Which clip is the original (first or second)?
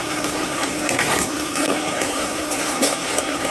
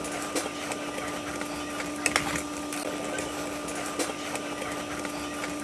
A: second